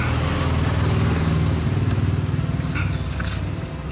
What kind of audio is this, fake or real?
real